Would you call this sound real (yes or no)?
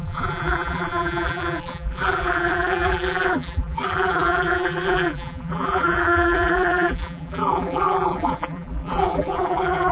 no